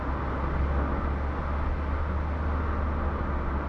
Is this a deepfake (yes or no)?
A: no